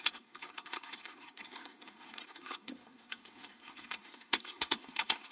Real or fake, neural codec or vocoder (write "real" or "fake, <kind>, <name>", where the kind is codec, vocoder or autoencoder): fake, codec, SNAC